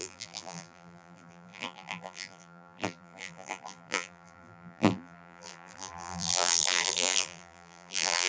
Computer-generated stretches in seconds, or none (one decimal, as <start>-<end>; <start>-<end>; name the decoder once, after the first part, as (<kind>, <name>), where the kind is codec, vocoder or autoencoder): 0.0-8.3 (vocoder, BigVGAN v2)